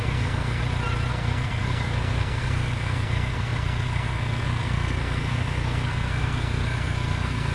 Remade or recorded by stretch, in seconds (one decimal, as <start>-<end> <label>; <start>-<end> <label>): 0.0-0.6 remade; 0.6-1.1 recorded; 1.1-7.5 remade